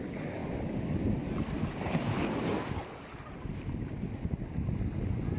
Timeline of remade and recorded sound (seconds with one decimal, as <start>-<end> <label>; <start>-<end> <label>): 0.0-5.4 recorded